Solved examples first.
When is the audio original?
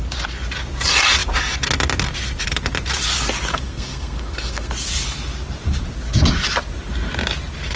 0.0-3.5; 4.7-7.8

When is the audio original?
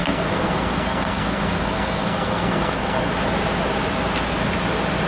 3.1-5.1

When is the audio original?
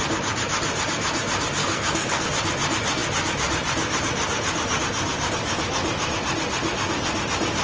0.0-1.6; 2.3-7.6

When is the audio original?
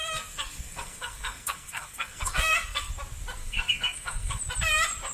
2.9-3.4; 4.4-5.1